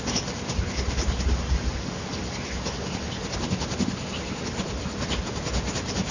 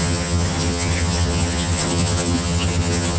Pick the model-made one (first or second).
second